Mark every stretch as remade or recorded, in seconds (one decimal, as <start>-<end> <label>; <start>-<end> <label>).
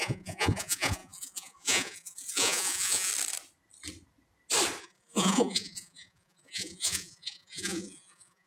0.0-3.1 remade; 3.1-4.8 recorded; 4.8-8.5 remade